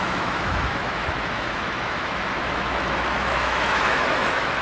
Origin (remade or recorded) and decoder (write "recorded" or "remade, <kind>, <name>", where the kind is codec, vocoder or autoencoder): remade, autoencoder, DAC-VAE